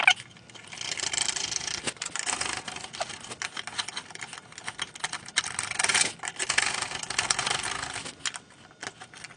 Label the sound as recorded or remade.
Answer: recorded